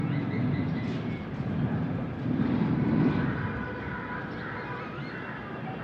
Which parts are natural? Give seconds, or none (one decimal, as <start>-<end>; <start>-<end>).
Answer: 0.0-0.4; 3.9-5.8